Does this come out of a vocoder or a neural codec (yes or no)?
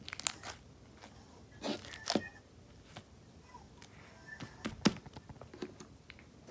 no